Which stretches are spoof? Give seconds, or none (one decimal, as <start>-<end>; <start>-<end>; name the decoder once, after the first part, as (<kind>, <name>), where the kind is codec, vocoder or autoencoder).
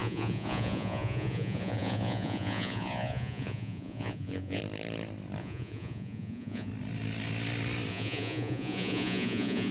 0.0-4.6 (vocoder, Vocos); 5.4-6.7; 7.9-9.7